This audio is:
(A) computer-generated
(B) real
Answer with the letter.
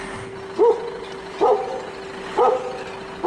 B